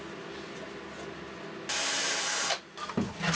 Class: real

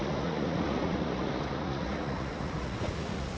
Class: fake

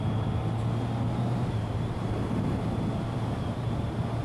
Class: real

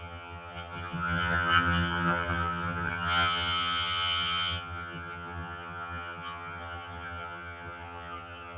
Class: fake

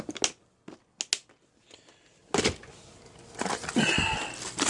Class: real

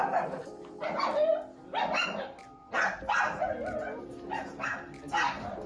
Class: real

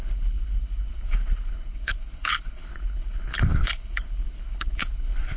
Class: fake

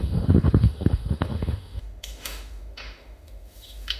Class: fake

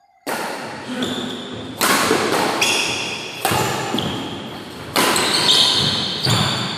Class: real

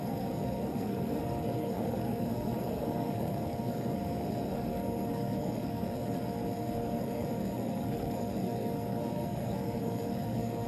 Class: fake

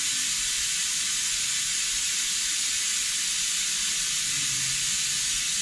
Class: real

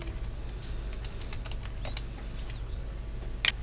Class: real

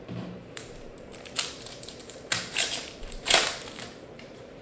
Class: fake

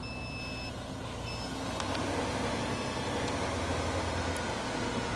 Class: real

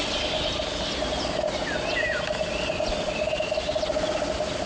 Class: real